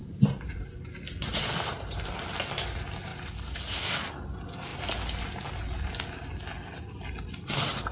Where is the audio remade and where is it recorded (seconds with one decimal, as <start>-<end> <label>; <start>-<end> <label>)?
0.0-0.7 remade; 0.7-1.3 recorded; 1.3-2.1 remade; 2.1-3.1 recorded; 3.1-4.1 remade; 4.1-7.9 recorded